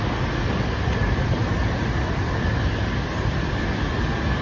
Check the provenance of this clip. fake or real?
real